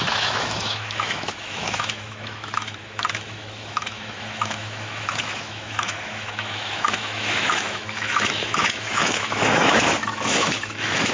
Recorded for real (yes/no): no